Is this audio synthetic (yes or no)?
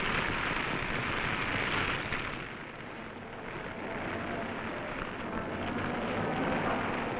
no